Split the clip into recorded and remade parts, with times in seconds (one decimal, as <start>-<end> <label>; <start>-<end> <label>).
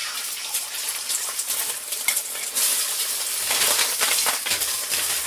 0.0-2.7 remade; 2.7-3.5 recorded; 3.5-5.3 remade